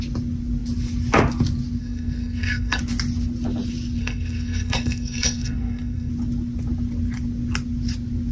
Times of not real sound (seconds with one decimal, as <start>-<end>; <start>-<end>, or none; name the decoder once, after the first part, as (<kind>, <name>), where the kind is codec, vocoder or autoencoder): 1.8-2.8 (codec, SNAC); 4.0-6.1